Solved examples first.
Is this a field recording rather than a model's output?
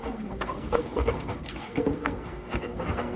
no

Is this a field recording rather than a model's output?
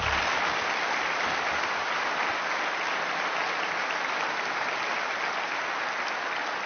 yes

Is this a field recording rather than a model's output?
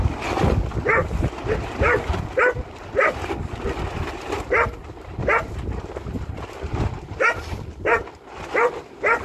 yes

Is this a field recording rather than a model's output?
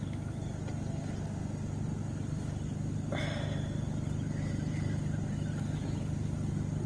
yes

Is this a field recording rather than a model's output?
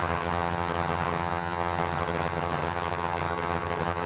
no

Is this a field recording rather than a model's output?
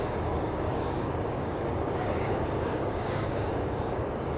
no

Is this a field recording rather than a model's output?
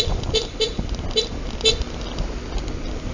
yes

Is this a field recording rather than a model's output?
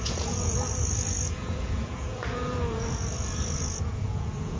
no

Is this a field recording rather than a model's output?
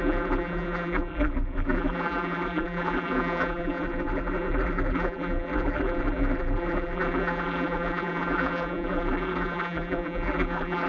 no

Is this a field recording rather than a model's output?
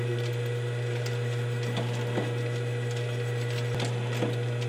yes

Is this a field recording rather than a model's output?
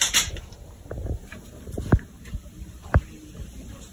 no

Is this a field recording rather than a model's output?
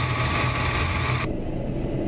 yes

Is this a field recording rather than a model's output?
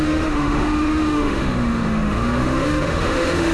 no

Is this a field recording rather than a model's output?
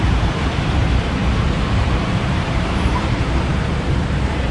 no